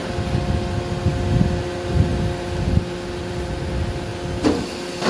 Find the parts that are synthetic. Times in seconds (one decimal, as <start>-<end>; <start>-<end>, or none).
none